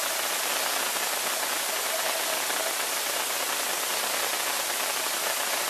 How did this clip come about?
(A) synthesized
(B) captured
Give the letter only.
B